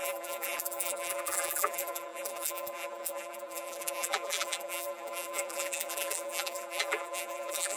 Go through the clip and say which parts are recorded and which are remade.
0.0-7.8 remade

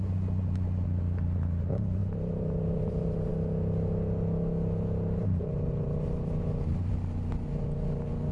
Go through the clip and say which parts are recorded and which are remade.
0.0-2.0 recorded; 2.0-3.3 remade; 3.3-5.2 recorded; 5.2-6.9 remade; 6.9-8.3 recorded

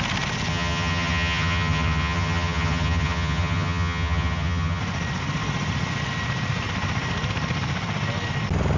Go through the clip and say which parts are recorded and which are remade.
0.0-0.5 recorded; 0.5-4.8 remade; 4.8-8.8 recorded

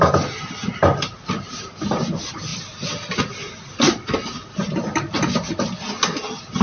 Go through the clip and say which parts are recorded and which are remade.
0.0-6.6 recorded

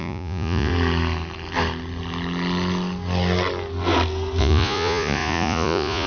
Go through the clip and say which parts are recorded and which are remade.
0.0-0.7 remade; 0.7-4.4 recorded; 4.4-6.1 remade

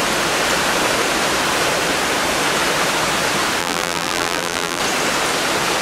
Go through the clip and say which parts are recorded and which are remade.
0.0-3.6 recorded; 3.6-4.8 remade; 4.8-5.8 recorded

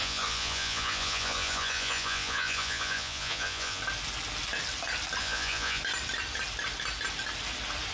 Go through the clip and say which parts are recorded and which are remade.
0.0-3.8 remade; 3.8-5.2 recorded; 5.2-5.8 remade; 5.8-7.9 recorded

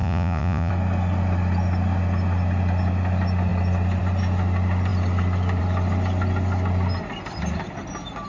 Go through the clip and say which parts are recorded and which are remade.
0.0-0.7 remade; 0.7-8.3 recorded